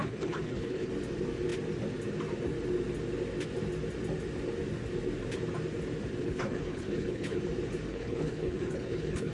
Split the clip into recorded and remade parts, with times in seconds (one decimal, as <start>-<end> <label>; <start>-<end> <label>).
0.0-0.9 remade; 0.9-6.2 recorded; 6.2-7.4 remade; 7.4-7.9 recorded; 7.9-9.3 remade